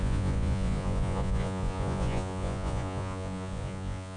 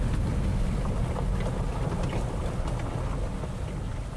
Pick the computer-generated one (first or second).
first